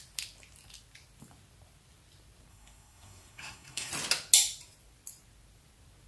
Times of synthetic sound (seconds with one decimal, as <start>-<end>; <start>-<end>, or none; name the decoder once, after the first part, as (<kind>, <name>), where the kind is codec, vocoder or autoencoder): 2.5-3.9 (codec, SNAC)

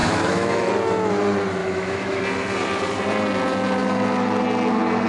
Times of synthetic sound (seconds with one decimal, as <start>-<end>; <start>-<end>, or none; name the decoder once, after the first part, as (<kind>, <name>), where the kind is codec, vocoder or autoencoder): 0.0-0.7 (autoencoder, DAC-VAE); 1.6-2.2

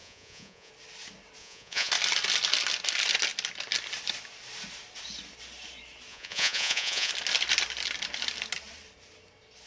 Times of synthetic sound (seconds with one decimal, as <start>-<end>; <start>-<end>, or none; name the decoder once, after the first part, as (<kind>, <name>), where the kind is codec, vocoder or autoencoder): 0.0-0.7 (vocoder, Vocos); 1.4-1.9; 6.1-7.1